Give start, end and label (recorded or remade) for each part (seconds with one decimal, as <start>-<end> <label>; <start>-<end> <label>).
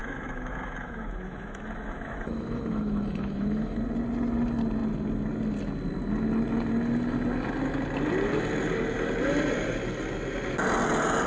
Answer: 0.0-3.8 remade; 3.8-11.3 recorded